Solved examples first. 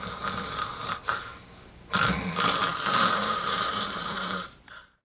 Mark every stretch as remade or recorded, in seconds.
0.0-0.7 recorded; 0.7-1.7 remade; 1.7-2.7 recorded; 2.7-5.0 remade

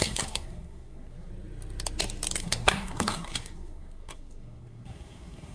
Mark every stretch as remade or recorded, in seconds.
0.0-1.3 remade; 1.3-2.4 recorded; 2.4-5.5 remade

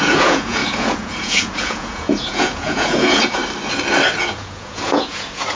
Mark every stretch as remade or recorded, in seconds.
0.0-3.4 remade; 3.4-4.2 recorded; 4.2-5.6 remade

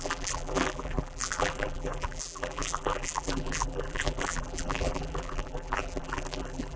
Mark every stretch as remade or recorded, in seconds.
0.0-6.8 remade